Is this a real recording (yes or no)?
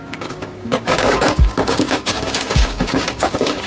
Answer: no